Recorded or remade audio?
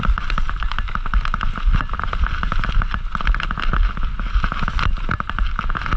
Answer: recorded